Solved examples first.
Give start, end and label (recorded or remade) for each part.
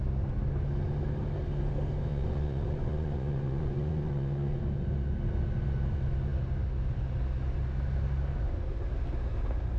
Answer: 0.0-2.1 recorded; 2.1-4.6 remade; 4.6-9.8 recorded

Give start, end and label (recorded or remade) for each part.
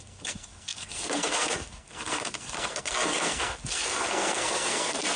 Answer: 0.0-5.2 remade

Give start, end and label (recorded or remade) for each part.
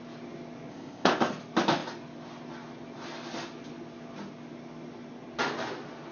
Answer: 0.0-0.7 recorded; 0.7-1.3 remade; 1.3-6.1 recorded